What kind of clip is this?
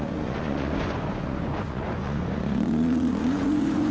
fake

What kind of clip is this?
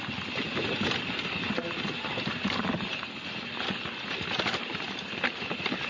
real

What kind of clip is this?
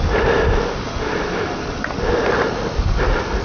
real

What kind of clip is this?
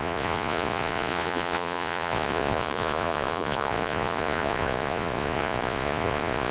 fake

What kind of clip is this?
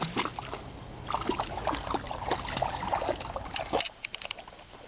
real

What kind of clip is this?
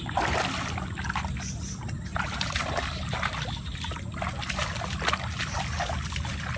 real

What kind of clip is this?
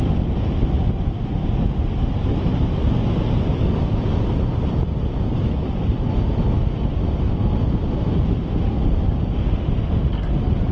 real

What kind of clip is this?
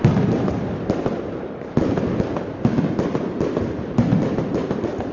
real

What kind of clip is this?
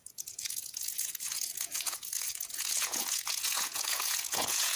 fake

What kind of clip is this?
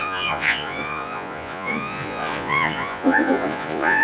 fake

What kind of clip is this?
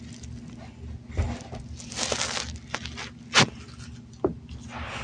real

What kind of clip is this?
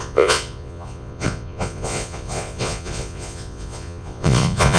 fake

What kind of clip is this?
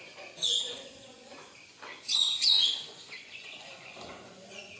fake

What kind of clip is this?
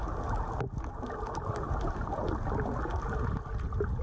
real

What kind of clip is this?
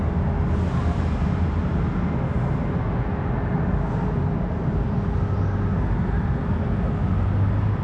real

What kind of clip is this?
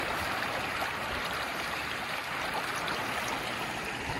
real